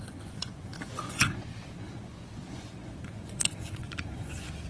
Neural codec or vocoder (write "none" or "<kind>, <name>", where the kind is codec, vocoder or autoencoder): vocoder, Vocos